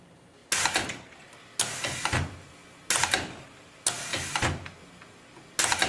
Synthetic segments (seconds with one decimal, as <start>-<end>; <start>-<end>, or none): none